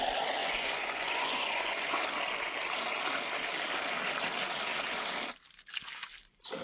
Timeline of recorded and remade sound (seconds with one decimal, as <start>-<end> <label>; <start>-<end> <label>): 0.0-0.4 recorded; 0.4-2.0 remade; 2.0-6.6 recorded